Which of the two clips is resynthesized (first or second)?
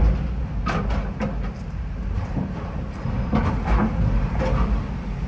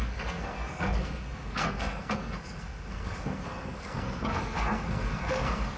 second